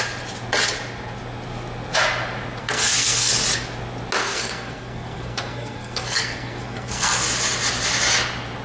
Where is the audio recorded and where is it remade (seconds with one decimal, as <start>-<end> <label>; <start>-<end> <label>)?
0.0-2.6 recorded; 2.6-3.3 remade; 3.3-4.2 recorded; 4.2-7.2 remade; 7.2-8.6 recorded